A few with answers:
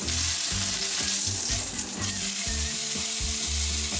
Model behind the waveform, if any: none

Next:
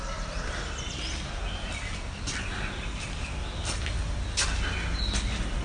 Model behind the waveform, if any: none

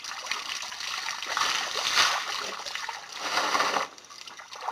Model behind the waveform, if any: none